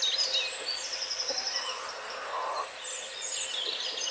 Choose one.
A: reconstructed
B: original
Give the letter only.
B